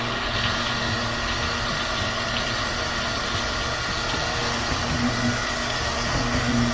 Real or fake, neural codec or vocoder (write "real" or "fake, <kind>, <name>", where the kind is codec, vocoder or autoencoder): real